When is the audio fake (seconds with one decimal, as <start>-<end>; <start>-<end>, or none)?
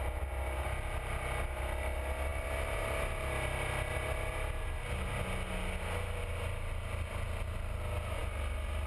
none